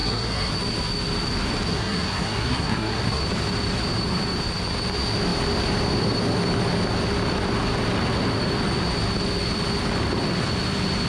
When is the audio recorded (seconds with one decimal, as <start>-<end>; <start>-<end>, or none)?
0.5-1.7; 3.2-11.1